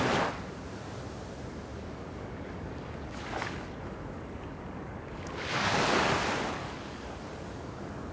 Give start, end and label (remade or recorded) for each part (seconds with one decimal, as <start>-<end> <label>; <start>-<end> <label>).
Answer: 0.0-1.7 recorded; 1.7-6.1 remade; 6.1-6.6 recorded; 6.6-8.1 remade